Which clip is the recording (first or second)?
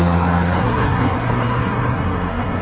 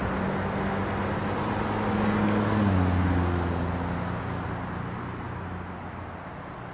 second